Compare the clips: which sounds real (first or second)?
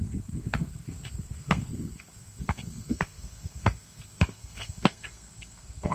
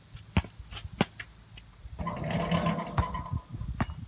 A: second